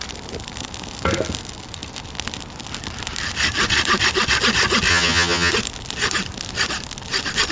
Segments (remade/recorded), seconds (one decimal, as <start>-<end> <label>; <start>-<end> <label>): 0.0-4.9 recorded; 4.9-5.5 remade; 5.5-7.5 recorded